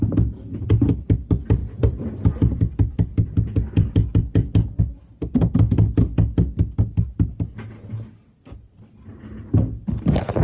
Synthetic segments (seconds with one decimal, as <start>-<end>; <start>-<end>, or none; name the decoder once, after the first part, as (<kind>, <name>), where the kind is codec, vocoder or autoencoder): 1.6-4.8 (vocoder, BigVGAN v2)